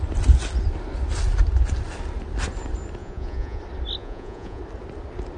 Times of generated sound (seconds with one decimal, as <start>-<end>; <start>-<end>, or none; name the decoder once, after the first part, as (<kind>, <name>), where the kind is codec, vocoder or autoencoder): 3.0-3.6 (vocoder, Vocos); 4.0-4.6